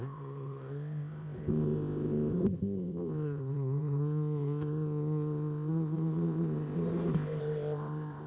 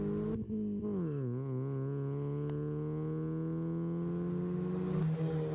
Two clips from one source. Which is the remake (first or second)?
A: first